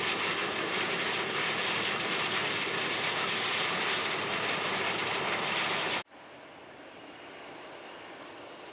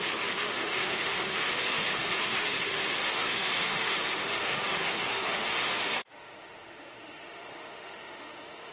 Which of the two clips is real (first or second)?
first